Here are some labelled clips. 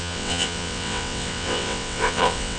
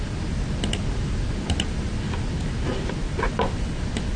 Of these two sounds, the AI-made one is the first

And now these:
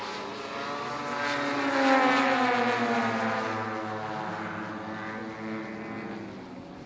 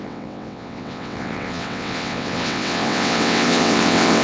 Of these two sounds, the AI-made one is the second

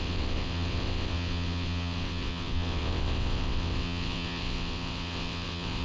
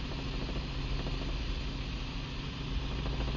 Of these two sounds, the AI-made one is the first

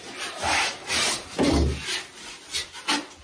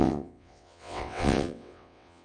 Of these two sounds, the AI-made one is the second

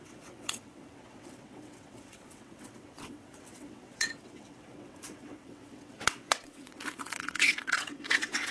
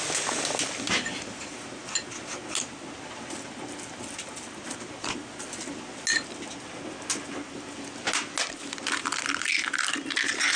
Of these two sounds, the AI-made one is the first